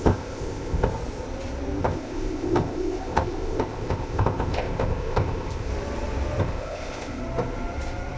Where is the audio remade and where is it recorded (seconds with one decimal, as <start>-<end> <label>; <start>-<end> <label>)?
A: 0.0-0.9 remade; 0.9-1.8 recorded; 1.8-5.7 remade; 5.7-6.4 recorded; 6.4-7.2 remade; 7.2-8.2 recorded